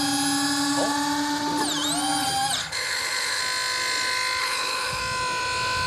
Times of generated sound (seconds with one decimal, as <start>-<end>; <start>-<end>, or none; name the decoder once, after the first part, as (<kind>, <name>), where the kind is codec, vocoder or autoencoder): 2.6-3.4 (codec, HILCodec); 4.4-5.0